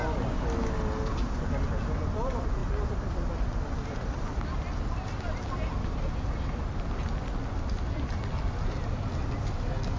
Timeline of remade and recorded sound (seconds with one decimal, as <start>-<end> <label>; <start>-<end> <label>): 0.0-10.0 recorded